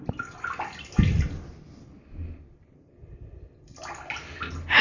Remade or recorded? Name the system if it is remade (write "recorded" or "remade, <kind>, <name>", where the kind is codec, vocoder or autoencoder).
recorded